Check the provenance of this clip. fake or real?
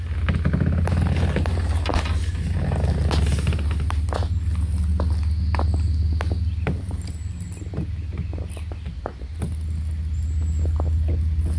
real